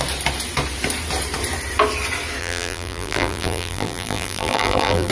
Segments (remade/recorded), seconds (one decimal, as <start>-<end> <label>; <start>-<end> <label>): 0.0-2.4 recorded; 2.4-5.1 remade